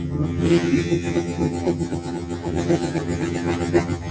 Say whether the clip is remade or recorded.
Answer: remade